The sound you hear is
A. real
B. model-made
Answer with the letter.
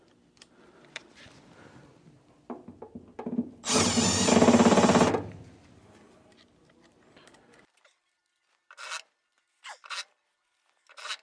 A